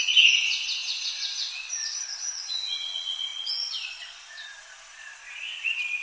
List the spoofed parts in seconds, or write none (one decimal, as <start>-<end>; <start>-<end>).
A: 0.0-6.0